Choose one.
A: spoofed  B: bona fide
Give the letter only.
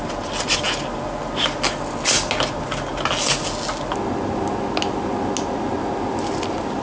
B